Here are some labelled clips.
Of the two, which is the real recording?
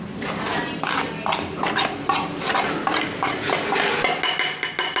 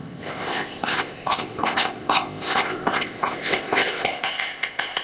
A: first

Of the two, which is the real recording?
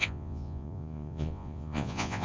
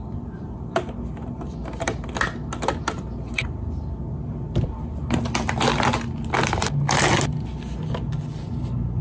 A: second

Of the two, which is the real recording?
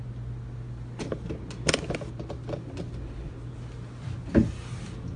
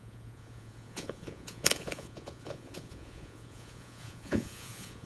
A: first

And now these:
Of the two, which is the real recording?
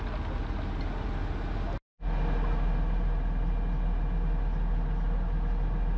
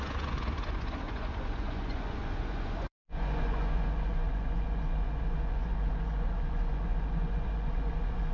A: first